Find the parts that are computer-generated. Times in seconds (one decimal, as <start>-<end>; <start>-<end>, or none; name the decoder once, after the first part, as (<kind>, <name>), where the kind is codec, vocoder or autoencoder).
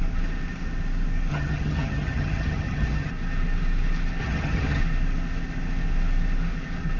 1.3-3.1 (vocoder, HiFi-GAN); 4.2-4.8